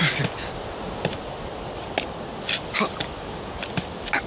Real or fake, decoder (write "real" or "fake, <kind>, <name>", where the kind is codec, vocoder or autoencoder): real